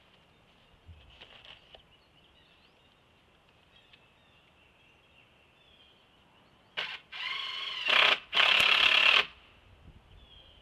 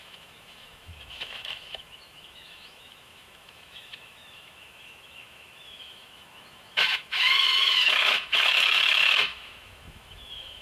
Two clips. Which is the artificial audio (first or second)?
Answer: second